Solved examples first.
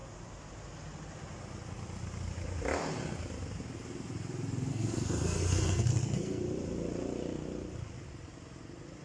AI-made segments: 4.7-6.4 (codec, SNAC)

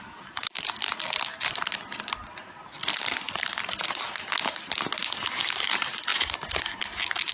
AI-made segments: none

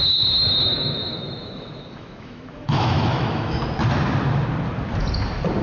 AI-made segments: 0.7-3.6 (autoencoder, DAC-VAE)

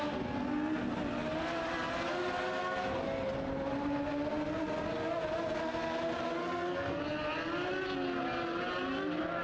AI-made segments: 6.4-7.0 (codec, SNAC)

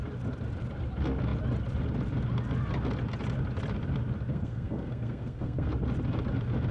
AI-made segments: 4.3-5.7 (codec, SNAC)

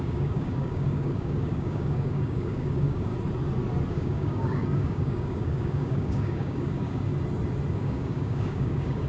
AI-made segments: 0.0-3.1 (codec, DAC); 3.9-7.1; 7.7-9.1